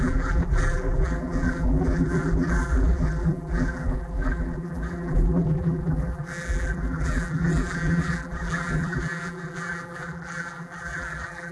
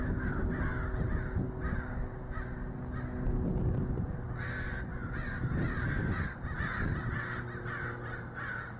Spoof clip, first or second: first